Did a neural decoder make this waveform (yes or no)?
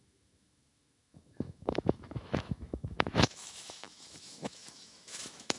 yes